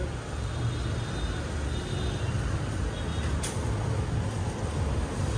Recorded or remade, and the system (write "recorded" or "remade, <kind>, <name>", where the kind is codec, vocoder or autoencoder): recorded